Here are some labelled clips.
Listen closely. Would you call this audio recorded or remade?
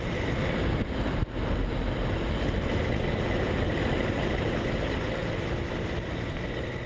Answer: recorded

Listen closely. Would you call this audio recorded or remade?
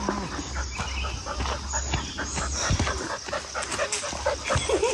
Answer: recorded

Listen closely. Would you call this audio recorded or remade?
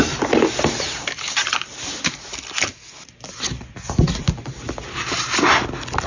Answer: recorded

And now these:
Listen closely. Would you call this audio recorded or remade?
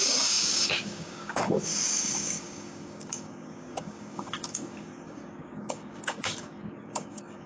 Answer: remade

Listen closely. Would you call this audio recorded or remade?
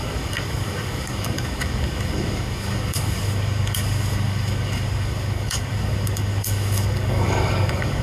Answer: remade